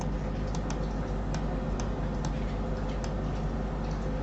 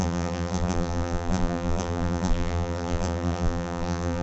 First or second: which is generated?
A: second